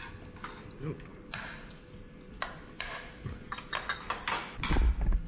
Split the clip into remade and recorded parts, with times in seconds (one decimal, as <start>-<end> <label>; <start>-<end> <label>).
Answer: 0.0-5.3 recorded